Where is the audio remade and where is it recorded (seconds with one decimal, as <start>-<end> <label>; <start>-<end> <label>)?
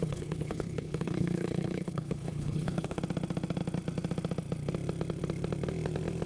0.0-3.0 remade; 3.0-6.3 recorded